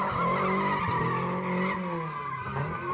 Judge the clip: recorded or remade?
recorded